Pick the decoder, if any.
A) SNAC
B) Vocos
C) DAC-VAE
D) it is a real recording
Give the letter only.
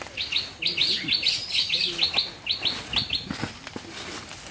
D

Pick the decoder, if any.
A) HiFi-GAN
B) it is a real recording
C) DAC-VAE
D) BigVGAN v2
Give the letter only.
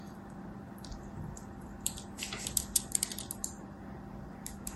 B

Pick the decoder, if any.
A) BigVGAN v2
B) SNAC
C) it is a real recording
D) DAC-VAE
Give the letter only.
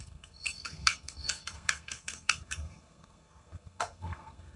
B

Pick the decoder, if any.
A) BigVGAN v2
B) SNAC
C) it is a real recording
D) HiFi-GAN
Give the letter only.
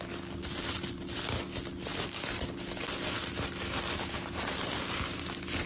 C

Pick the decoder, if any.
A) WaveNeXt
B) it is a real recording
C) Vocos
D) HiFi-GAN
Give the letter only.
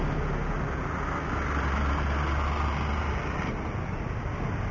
B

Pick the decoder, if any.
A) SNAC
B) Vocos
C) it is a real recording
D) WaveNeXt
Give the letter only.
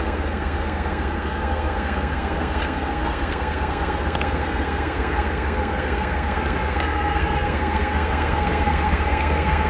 A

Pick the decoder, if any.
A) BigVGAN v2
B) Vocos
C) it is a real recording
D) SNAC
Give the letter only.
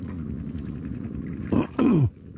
B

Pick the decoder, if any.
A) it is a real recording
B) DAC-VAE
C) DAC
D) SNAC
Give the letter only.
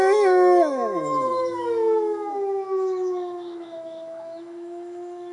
B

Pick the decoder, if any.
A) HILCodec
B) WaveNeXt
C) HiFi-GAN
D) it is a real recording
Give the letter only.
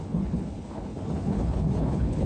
A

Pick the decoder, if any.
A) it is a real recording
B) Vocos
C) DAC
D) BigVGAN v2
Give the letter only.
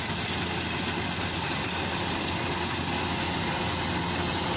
A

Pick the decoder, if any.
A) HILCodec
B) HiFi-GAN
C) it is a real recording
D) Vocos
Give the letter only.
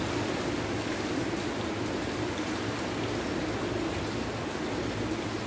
C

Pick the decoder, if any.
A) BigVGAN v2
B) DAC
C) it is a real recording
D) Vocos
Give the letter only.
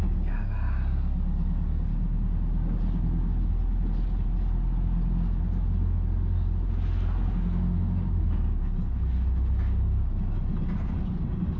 C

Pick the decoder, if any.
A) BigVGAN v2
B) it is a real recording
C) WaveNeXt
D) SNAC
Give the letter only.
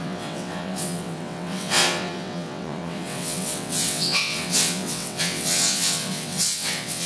C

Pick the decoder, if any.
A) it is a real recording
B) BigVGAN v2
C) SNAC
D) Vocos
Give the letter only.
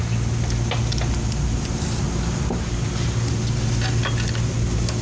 A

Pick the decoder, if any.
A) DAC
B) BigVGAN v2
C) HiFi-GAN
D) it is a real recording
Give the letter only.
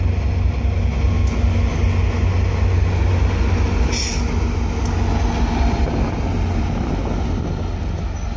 D